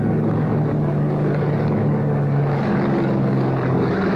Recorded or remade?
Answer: remade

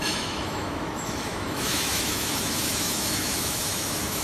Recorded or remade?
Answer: remade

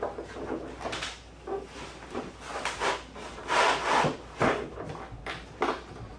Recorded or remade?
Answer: recorded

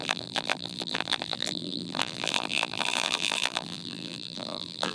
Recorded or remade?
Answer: remade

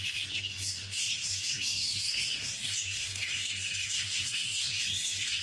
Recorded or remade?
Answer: remade